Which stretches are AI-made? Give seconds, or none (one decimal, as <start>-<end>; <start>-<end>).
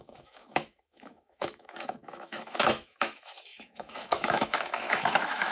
0.0-5.5